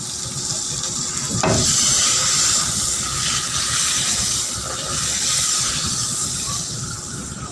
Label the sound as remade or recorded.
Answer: recorded